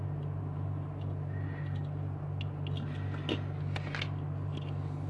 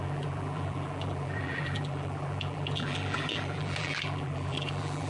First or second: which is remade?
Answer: second